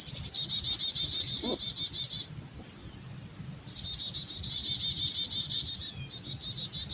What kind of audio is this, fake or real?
real